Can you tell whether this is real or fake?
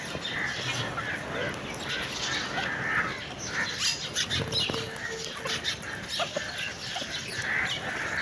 real